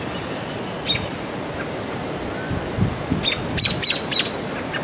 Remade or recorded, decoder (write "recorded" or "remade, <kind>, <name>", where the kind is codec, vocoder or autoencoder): recorded